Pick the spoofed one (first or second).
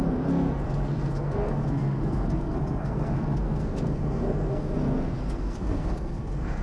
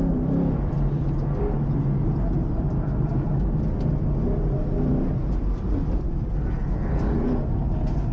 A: first